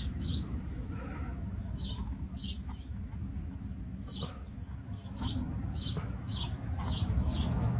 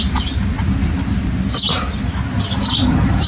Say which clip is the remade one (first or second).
first